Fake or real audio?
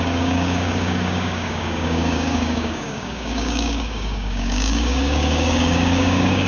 fake